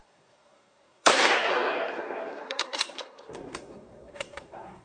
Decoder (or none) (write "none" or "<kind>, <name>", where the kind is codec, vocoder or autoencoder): codec, SNAC